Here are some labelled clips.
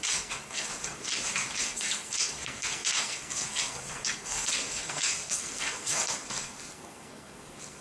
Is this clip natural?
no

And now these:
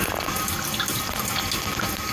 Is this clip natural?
yes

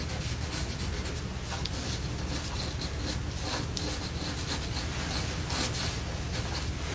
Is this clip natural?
yes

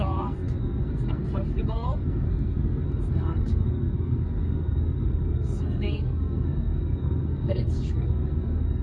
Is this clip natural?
no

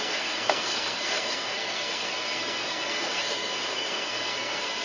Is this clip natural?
no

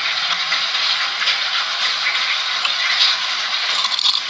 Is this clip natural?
no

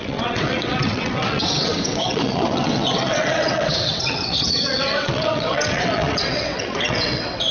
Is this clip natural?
no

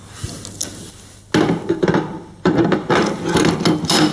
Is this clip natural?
yes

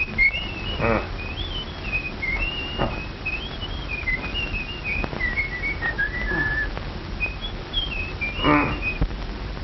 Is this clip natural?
yes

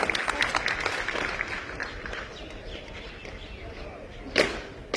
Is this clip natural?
yes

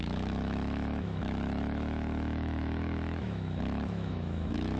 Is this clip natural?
no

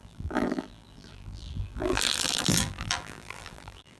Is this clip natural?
no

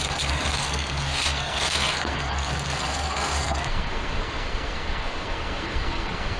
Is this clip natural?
no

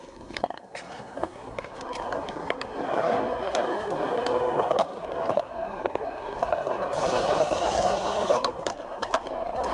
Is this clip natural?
no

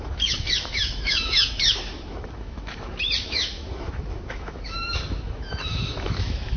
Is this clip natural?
no